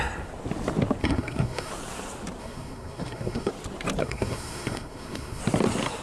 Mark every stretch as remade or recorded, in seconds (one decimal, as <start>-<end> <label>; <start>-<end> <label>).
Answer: 0.0-1.0 recorded; 1.0-1.7 remade; 1.7-2.4 recorded; 2.4-3.5 remade; 3.5-4.0 recorded; 4.0-5.4 remade; 5.4-6.0 recorded